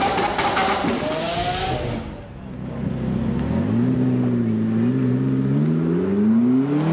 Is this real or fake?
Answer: real